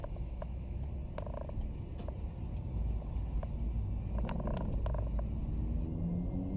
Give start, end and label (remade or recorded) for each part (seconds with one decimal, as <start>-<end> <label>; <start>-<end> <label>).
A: 0.0-0.9 remade; 0.9-6.6 recorded